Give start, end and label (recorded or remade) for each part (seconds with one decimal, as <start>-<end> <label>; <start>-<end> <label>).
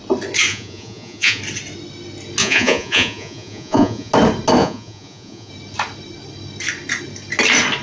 0.0-0.5 recorded; 0.5-1.4 remade; 1.4-2.4 recorded; 2.4-4.1 remade; 4.1-4.6 recorded; 4.6-5.5 remade; 5.5-7.8 recorded